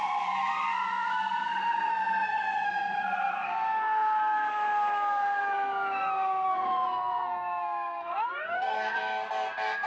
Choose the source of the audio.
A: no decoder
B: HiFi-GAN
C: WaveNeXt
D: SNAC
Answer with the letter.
D